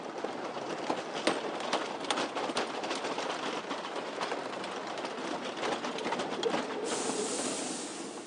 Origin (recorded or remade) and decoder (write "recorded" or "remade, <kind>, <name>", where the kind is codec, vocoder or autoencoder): recorded